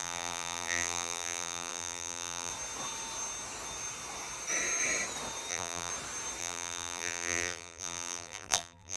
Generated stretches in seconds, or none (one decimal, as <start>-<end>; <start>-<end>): 0.0-2.5; 5.5-5.9; 6.4-9.0